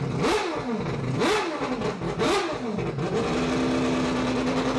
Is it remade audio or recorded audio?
recorded